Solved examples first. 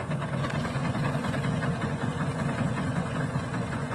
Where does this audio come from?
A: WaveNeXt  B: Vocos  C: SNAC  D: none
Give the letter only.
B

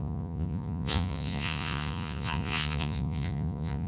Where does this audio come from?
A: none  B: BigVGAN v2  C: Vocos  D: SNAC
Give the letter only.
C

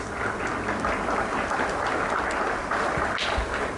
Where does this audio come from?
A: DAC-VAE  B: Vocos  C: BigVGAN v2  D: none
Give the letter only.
D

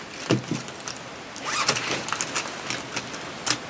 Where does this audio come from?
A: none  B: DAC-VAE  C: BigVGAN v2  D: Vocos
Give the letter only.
A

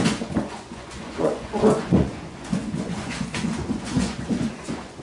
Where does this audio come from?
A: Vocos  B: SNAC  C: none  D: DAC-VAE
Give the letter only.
A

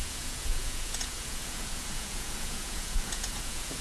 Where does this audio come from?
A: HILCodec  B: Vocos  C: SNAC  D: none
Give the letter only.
B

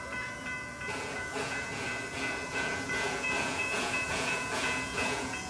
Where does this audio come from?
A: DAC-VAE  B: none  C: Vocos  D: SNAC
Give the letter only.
C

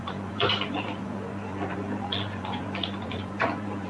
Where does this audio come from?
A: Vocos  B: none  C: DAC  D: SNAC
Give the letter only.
A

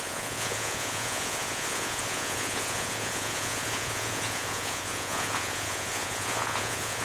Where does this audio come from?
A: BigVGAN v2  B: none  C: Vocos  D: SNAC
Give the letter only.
C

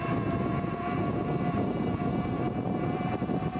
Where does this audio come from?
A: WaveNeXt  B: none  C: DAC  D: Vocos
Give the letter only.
B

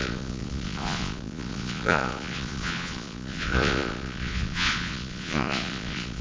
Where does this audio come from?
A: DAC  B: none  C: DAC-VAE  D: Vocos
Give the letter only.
D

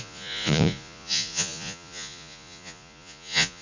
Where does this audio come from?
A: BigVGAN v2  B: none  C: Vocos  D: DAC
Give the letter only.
C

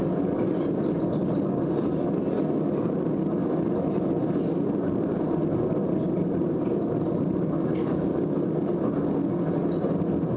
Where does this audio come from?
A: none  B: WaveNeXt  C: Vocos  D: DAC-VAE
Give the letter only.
A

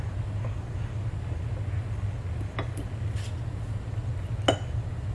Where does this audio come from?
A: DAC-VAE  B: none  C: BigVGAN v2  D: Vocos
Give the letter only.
B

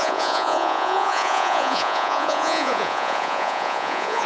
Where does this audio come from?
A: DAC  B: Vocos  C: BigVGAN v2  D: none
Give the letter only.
B